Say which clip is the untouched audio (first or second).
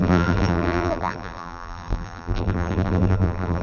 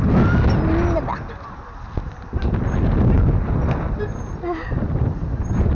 second